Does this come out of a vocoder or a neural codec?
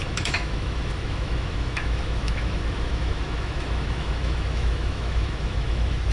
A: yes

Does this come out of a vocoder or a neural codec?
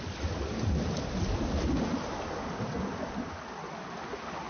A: no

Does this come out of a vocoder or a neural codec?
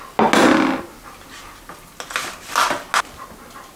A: no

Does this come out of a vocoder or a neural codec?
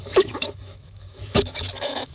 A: yes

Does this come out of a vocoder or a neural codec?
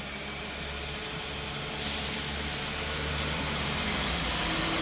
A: no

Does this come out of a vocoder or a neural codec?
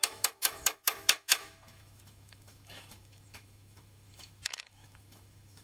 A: yes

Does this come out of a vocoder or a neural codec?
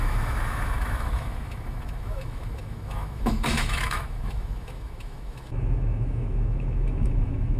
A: yes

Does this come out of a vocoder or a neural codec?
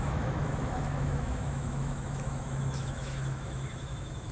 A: yes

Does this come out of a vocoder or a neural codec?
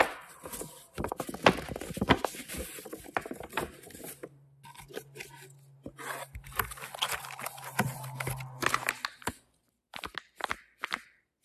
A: no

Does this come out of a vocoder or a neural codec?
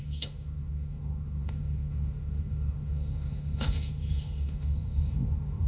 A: yes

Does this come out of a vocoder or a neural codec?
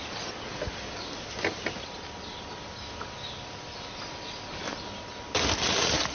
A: no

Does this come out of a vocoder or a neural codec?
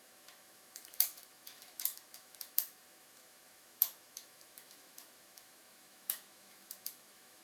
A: yes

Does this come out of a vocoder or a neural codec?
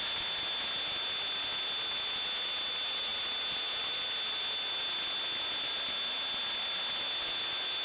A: no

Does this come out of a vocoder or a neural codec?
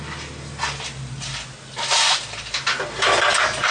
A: no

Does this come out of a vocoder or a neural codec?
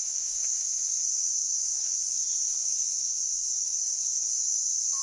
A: yes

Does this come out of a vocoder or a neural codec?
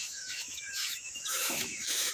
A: yes